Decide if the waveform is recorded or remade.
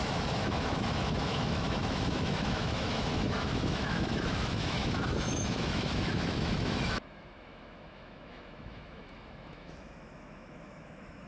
remade